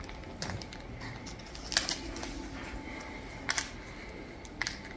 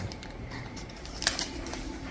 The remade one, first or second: second